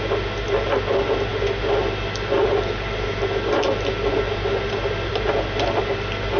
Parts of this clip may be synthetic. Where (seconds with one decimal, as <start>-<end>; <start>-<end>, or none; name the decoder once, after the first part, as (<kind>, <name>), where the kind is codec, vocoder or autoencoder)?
none